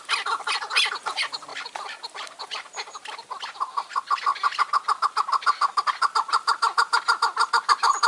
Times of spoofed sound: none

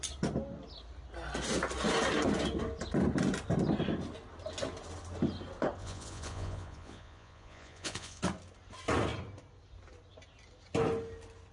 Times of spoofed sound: 5.8-8.2 (vocoder, Vocos)

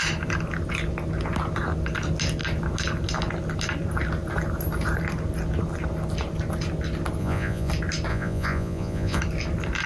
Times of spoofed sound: 7.2-7.7 (vocoder, Vocos); 8.1-9.2

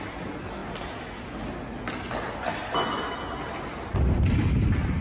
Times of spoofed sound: none

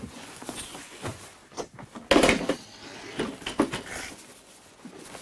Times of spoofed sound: 0.0-1.3 (vocoder, Vocos); 4.1-5.2

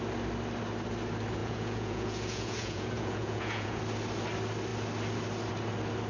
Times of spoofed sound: 1.4-3.8 (vocoder, Vocos)

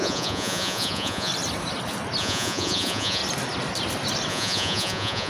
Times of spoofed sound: 0.0-1.3 (vocoder, Vocos); 2.2-3.2; 4.3-5.3

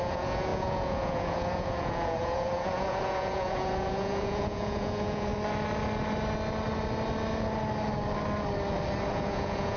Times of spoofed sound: 0.0-5.3 (vocoder, Vocos); 9.1-9.8